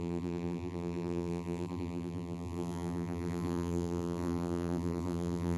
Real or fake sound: fake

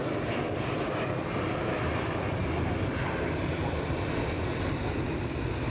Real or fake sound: real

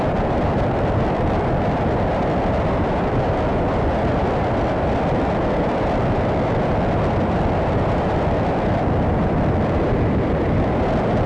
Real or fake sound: fake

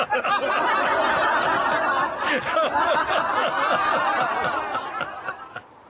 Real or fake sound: real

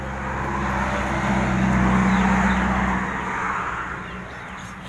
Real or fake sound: real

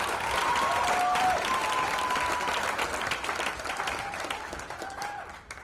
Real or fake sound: fake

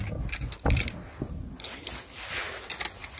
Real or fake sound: real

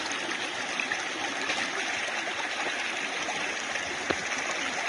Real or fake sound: real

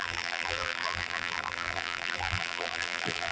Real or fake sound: fake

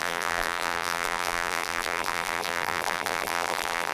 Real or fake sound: fake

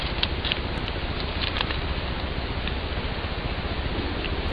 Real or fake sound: real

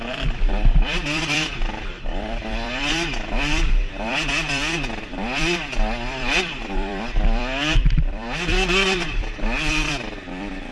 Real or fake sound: fake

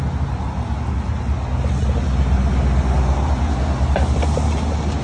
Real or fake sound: real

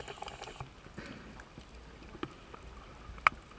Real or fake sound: real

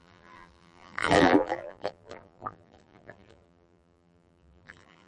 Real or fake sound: fake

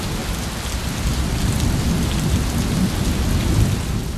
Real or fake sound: real